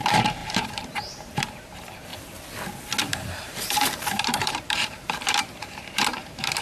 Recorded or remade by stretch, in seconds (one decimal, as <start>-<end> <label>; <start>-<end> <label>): 0.0-2.1 remade; 2.1-3.0 recorded; 3.0-6.6 remade